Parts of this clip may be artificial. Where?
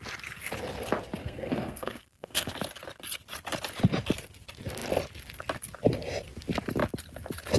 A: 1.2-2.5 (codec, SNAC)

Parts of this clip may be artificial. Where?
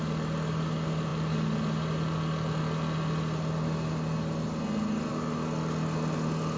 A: none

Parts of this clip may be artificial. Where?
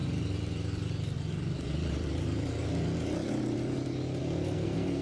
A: 4.2-5.0 (codec, SNAC)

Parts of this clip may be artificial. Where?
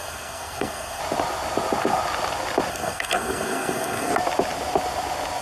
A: 0.0-1.0 (codec, SNAC); 2.7-4.1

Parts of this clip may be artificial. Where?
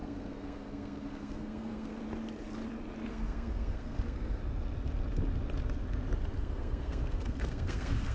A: 0.0-2.0 (codec, SNAC); 3.1-4.4; 6.4-8.1